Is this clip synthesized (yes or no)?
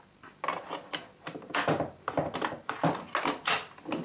no